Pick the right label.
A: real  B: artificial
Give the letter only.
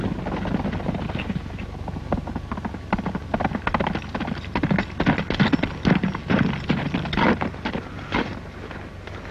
A